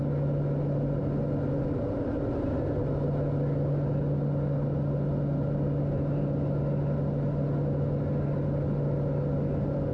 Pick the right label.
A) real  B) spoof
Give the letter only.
A